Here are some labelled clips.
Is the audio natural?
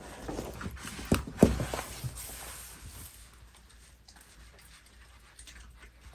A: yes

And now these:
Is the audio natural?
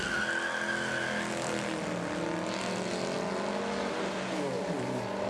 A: yes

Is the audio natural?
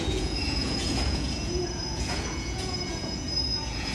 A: no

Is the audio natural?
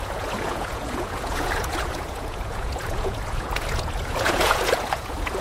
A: no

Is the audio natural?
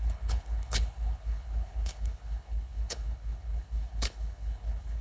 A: no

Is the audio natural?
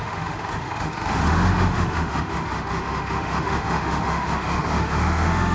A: no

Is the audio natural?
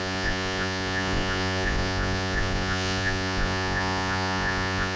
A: no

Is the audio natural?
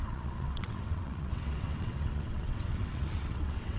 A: no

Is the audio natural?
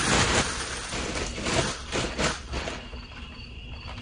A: yes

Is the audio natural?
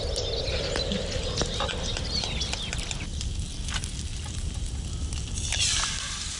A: yes